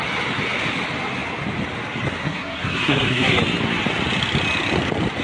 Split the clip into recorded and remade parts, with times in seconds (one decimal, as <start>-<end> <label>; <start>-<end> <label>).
0.0-2.2 recorded; 2.2-3.4 remade; 3.4-5.2 recorded